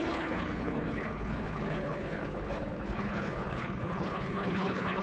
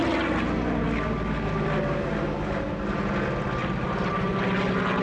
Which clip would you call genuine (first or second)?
second